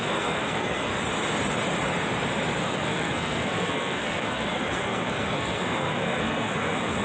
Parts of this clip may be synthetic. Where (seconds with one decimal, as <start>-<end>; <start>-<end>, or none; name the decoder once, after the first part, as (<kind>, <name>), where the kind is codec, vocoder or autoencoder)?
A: 0.0-0.9 (codec, SNAC); 2.6-7.0